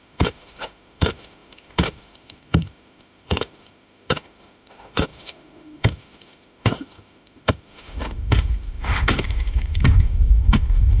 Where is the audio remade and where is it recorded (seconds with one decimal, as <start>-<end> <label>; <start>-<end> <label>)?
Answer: 0.0-11.0 remade